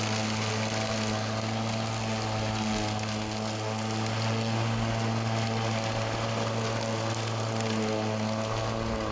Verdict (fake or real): real